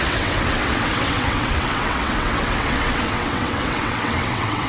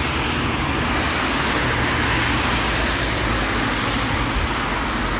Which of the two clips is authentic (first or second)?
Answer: second